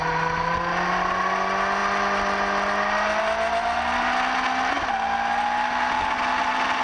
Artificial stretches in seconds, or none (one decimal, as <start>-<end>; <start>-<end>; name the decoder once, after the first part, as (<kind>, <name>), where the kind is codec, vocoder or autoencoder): none